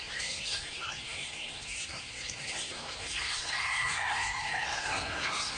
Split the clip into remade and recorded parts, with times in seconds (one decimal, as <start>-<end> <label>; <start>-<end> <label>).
0.0-5.6 remade